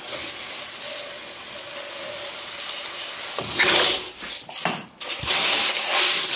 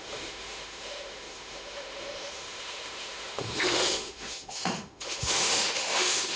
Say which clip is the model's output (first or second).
second